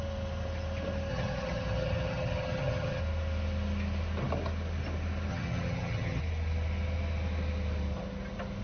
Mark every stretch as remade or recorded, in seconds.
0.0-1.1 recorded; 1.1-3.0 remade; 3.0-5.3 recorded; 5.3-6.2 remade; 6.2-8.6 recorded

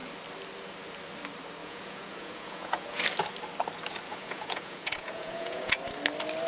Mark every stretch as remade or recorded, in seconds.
0.0-1.6 recorded; 1.6-3.0 remade; 3.0-4.1 recorded; 4.1-5.8 remade; 5.8-6.5 recorded

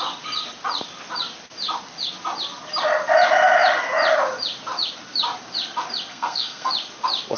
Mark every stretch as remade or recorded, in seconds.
0.0-6.1 recorded; 6.1-6.7 remade; 6.7-7.4 recorded